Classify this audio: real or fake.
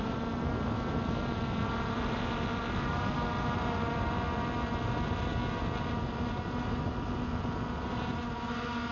real